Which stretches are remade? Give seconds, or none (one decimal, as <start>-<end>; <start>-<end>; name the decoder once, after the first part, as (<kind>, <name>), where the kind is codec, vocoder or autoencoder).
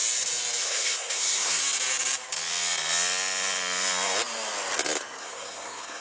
0.6-1.6 (codec, SNAC); 5.2-6.0